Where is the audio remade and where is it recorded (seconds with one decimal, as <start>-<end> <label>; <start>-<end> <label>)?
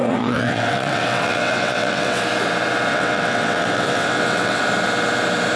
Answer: 0.0-2.2 remade; 2.2-2.9 recorded; 2.9-4.6 remade; 4.6-5.6 recorded